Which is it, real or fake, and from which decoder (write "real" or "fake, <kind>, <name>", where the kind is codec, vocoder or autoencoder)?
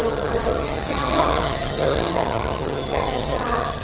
fake, vocoder, HiFi-GAN